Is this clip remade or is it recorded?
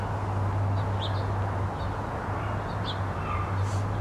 recorded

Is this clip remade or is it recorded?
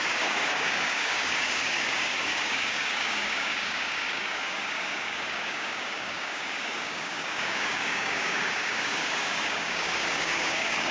remade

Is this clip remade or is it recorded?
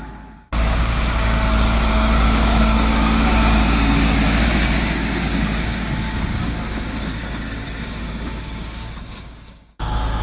remade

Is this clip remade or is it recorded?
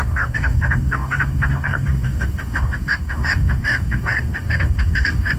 remade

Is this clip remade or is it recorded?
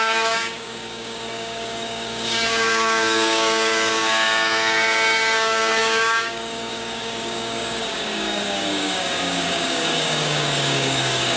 remade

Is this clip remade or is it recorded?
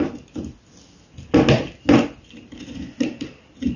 recorded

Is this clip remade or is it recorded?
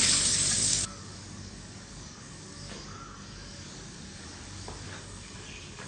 remade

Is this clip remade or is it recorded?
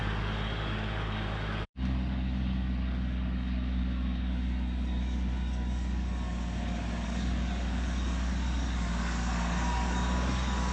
remade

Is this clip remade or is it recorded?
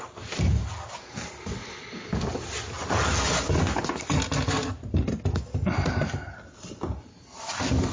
recorded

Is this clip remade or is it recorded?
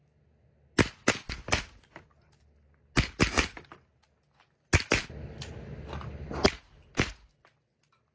recorded